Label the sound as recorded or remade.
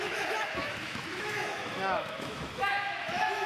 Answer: remade